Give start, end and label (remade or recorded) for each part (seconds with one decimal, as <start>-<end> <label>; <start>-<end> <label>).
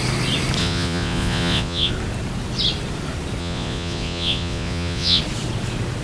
0.0-0.6 recorded; 0.6-1.9 remade; 1.9-3.4 recorded; 3.4-5.2 remade; 5.2-6.0 recorded